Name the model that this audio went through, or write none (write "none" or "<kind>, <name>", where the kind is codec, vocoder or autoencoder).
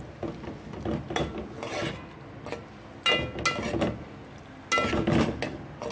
none